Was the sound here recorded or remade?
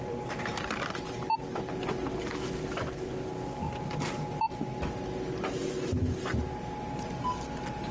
recorded